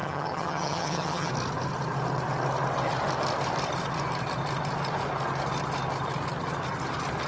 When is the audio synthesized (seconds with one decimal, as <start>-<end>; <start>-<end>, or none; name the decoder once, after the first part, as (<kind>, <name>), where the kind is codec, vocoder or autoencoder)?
0.0-1.3 (vocoder, HiFi-GAN)